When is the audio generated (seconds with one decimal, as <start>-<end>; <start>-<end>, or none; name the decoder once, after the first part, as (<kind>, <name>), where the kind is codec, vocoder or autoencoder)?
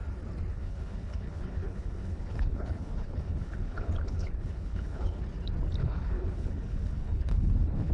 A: 0.5-5.2 (codec, HILCodec); 5.8-7.9